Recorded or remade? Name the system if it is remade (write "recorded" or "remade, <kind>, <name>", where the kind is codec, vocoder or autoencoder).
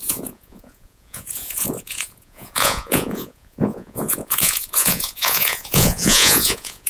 remade, vocoder, Vocos